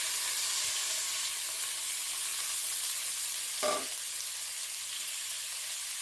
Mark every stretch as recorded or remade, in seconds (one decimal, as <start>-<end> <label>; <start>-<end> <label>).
0.0-6.0 recorded